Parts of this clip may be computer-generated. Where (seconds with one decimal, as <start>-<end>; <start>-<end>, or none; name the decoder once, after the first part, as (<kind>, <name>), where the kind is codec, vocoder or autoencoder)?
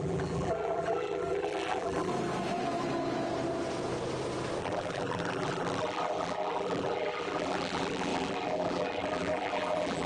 0.0-2.1 (vocoder, BigVGAN v2); 4.6-10.1